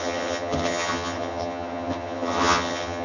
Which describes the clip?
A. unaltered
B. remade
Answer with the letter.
B